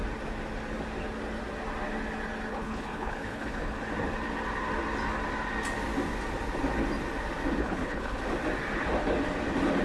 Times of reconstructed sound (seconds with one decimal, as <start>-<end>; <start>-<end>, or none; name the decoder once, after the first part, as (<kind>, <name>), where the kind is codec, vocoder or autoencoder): 2.5-3.8 (codec, HILCodec); 7.6-8.2